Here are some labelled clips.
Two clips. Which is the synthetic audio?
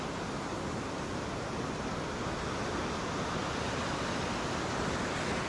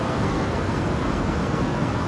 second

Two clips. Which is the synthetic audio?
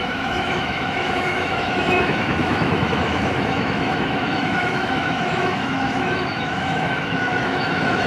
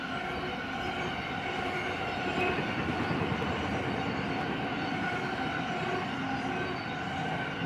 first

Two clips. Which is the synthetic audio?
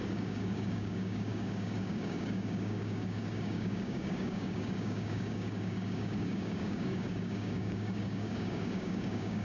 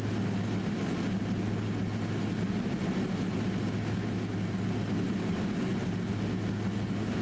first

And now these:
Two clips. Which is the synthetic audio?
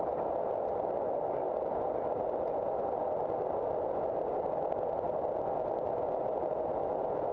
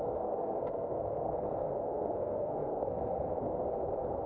second